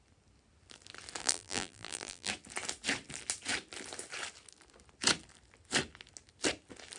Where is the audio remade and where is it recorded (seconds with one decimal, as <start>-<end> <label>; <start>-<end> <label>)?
0.0-1.2 recorded; 1.2-2.3 remade; 2.3-7.0 recorded